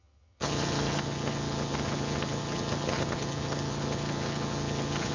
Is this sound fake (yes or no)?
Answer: yes